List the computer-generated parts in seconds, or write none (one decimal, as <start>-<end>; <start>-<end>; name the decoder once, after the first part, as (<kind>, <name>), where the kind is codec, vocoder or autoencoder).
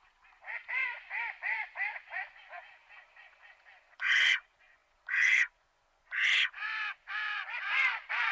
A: 0.0-8.3 (vocoder, Vocos)